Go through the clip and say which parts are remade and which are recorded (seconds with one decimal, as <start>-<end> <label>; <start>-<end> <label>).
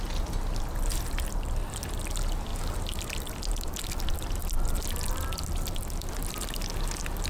0.0-7.3 recorded